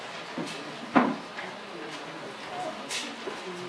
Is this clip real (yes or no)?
yes